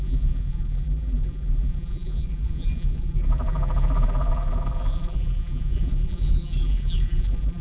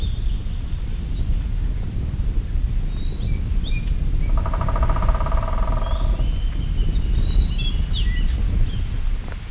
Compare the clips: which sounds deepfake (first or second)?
first